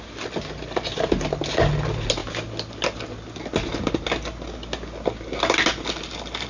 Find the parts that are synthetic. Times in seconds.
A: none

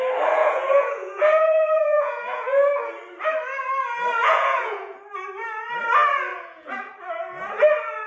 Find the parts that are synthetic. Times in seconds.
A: 0.4-2.7 (vocoder, Vocos); 4.2-5.0; 6.3-6.9

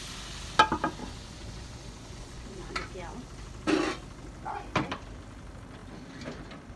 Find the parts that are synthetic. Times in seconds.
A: 1.0-2.7 (vocoder, Vocos)

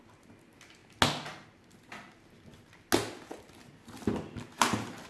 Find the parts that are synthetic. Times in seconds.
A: none

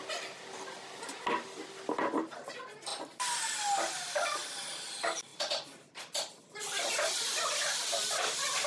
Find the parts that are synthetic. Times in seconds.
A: 5.3-8.1 (vocoder, BigVGAN v2)

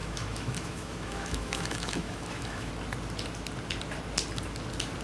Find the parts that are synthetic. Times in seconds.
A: 0.0-2.7 (autoencoder, DAC-VAE)

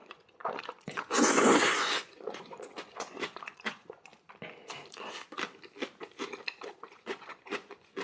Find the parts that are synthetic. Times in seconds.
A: 0.0-4.1 (vocoder, Vocos); 6.9-8.0